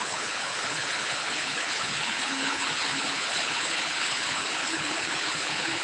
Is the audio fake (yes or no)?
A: yes